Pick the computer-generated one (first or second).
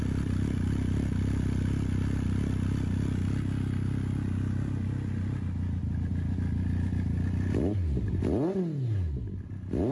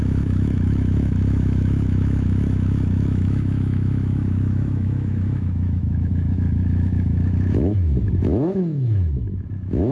second